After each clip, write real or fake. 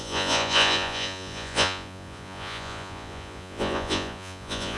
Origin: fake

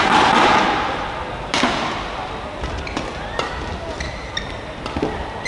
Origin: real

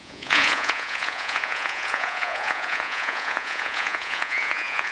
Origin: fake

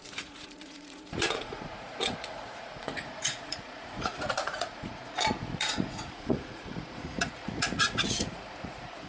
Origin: fake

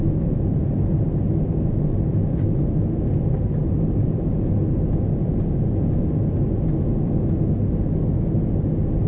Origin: real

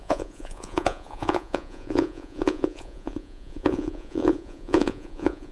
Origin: fake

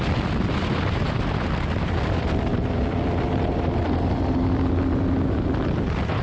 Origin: real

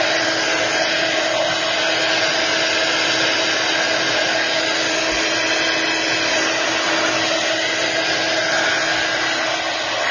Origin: real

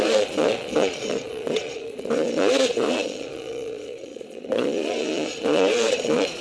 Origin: fake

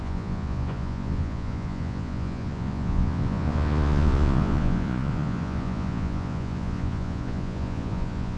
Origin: fake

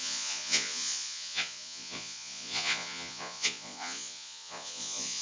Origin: fake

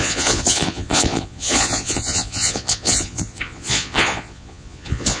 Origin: fake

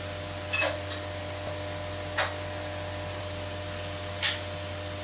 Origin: real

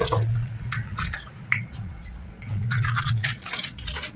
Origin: fake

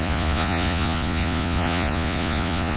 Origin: fake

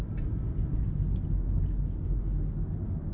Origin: real